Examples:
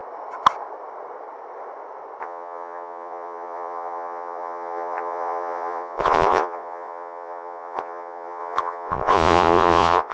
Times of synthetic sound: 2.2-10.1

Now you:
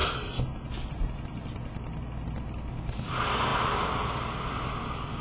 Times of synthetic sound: none

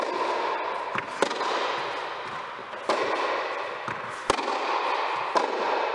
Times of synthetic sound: none